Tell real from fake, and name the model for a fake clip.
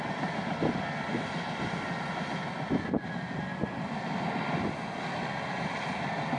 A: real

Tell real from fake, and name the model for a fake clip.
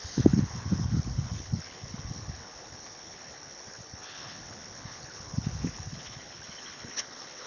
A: fake, codec, HILCodec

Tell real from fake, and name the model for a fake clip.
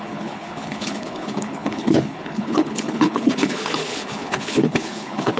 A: fake, codec, HILCodec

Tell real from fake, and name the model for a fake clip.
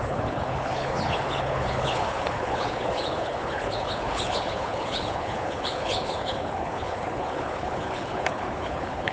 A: fake, codec, HILCodec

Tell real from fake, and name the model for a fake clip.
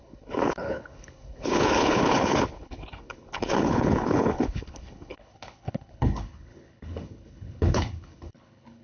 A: fake, codec, HILCodec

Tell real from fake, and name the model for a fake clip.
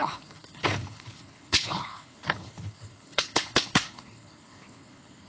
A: fake, codec, HILCodec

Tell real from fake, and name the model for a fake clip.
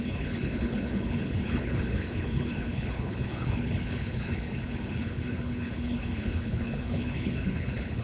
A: fake, codec, HILCodec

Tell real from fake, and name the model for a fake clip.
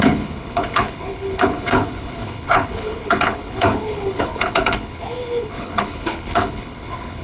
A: fake, codec, HILCodec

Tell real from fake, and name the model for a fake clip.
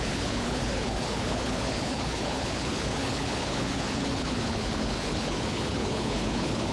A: fake, codec, HILCodec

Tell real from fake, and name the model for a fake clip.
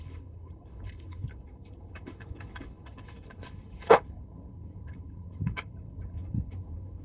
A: fake, codec, HILCodec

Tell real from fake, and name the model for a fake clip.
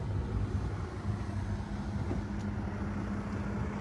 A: real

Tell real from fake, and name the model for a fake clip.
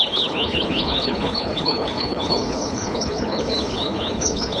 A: fake, codec, HILCodec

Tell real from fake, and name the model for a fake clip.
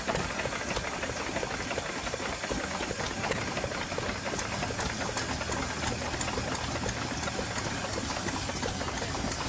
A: real